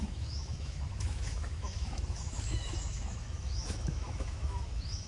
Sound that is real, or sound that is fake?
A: fake